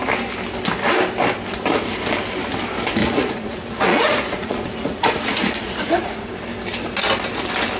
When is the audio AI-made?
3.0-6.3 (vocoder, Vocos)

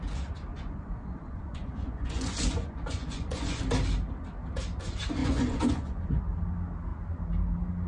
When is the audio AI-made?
0.5-3.6 (vocoder, Vocos); 5.2-6.2

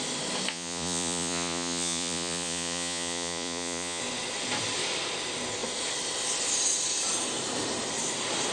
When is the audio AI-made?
0.5-4.0 (vocoder, Vocos)